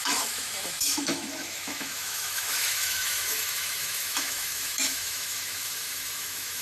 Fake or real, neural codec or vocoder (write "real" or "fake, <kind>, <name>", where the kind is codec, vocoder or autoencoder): fake, autoencoder, DAC-VAE